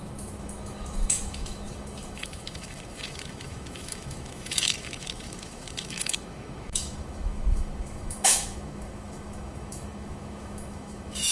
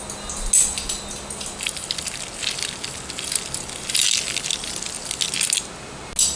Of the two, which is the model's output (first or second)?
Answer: first